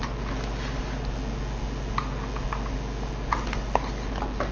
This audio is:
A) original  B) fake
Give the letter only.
A